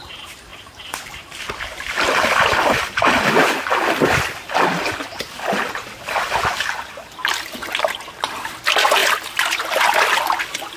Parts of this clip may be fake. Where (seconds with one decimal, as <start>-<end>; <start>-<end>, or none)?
0.5-3.1